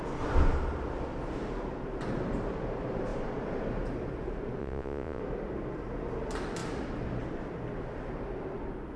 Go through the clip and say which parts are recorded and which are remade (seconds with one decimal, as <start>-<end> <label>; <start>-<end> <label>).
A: 0.0-4.6 recorded; 4.6-5.2 remade; 5.2-9.0 recorded